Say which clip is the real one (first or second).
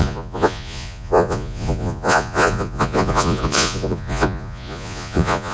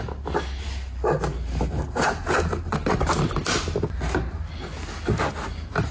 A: second